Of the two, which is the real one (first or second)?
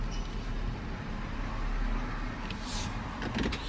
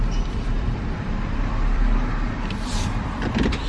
first